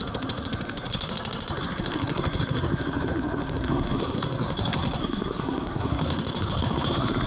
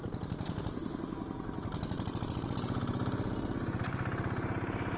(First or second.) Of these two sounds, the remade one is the first